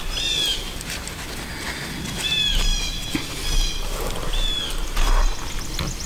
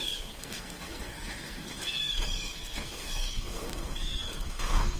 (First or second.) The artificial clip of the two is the second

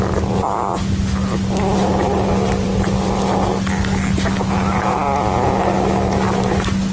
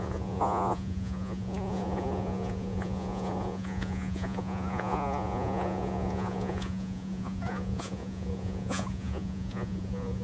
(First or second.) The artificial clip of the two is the second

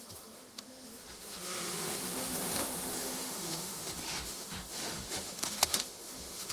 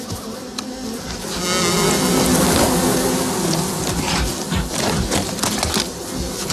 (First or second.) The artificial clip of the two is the first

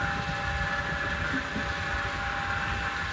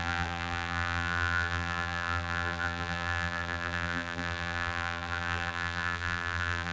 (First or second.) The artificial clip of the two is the second